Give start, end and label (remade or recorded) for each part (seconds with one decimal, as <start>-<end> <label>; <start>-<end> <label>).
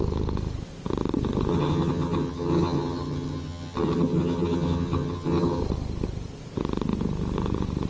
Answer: 0.0-1.5 recorded; 1.5-5.6 remade; 5.6-7.9 recorded